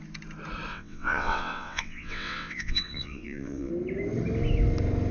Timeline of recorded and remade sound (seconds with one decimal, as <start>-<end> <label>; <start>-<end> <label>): 0.0-0.7 recorded; 0.7-3.7 remade; 3.7-5.1 recorded